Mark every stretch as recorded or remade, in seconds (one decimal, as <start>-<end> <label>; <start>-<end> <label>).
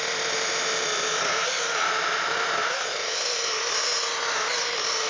0.0-5.1 recorded